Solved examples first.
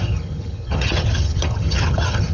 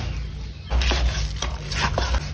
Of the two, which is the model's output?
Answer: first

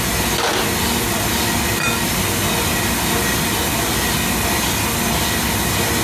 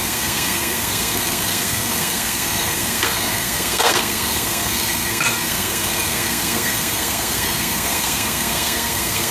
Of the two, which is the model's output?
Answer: second